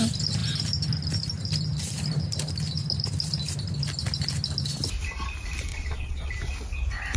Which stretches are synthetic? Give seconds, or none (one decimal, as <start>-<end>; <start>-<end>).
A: 5.7-6.3